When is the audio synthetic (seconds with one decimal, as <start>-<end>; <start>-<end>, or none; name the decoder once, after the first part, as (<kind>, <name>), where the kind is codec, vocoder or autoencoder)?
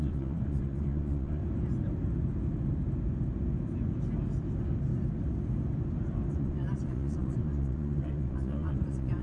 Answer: 0.0-1.4 (vocoder, Vocos); 6.3-9.2